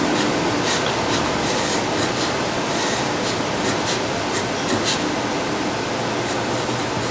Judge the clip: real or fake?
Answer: real